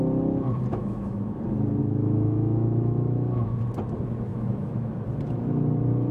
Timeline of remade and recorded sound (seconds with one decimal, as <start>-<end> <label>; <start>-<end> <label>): 0.0-0.7 recorded; 0.7-1.4 remade; 1.4-1.8 recorded; 1.8-3.6 remade; 3.6-4.3 recorded; 4.3-4.9 remade; 4.9-6.1 recorded